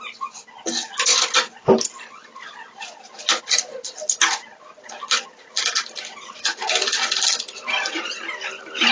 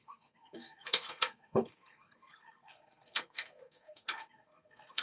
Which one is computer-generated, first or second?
second